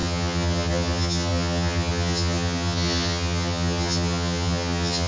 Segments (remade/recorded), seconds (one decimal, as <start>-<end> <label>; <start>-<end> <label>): 0.0-5.1 remade